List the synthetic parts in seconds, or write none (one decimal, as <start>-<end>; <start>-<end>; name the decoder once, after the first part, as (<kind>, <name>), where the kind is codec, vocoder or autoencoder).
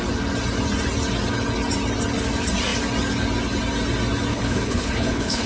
4.3-5.5 (codec, HILCodec)